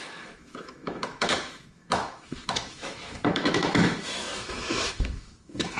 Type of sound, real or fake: fake